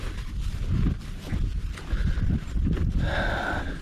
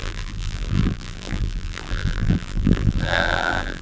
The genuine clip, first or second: first